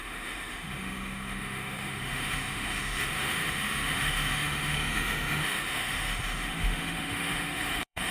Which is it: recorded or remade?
remade